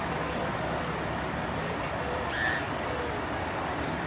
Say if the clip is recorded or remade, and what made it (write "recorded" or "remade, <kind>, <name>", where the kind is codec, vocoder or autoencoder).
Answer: remade, vocoder, BigVGAN v2